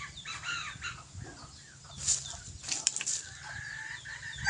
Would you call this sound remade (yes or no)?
no